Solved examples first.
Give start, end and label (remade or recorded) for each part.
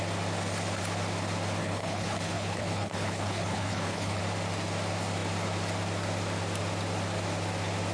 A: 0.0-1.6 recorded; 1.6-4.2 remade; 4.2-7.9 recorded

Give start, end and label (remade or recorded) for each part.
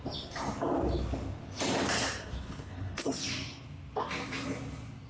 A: 0.0-2.2 recorded; 2.2-3.1 remade; 3.1-5.1 recorded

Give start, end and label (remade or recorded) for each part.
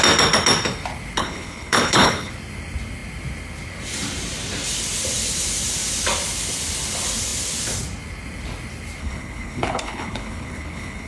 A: 0.0-1.2 recorded; 1.2-2.3 remade; 2.3-9.0 recorded; 9.0-11.1 remade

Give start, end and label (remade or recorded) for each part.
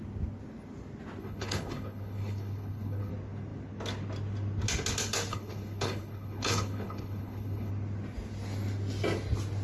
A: 0.0-1.2 recorded; 1.2-3.1 remade; 3.1-5.3 recorded; 5.3-7.7 remade; 7.7-9.6 recorded